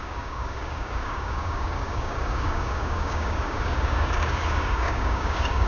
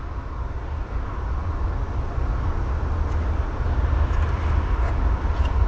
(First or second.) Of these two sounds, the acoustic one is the second